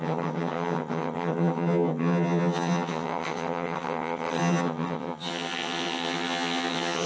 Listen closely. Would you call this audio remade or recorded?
remade